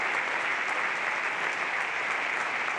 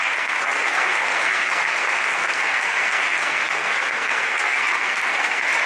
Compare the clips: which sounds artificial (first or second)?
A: second